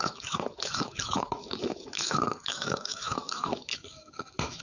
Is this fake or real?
fake